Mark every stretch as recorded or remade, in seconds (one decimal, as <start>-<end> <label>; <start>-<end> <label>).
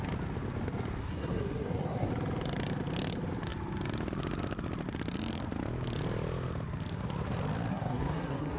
0.0-1.0 recorded; 1.0-2.1 remade; 2.1-7.7 recorded; 7.7-8.6 remade